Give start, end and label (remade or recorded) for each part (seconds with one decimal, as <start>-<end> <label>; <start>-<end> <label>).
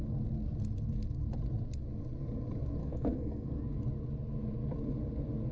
0.0-2.8 recorded; 2.8-3.5 remade; 3.5-5.5 recorded